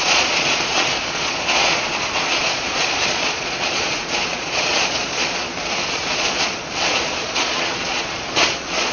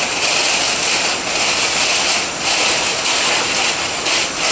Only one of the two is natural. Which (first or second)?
second